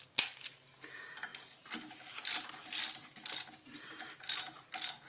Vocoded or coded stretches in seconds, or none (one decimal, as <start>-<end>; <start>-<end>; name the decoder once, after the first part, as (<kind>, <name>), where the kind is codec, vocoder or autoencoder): none